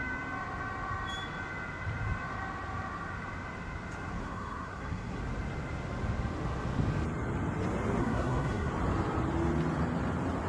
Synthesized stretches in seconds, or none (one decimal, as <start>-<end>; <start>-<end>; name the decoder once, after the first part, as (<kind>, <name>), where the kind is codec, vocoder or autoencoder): 4.2-5.2 (codec, SNAC); 8.0-8.7